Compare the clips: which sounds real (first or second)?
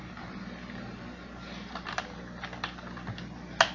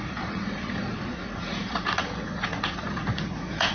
first